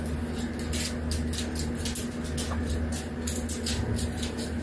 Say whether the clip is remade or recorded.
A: recorded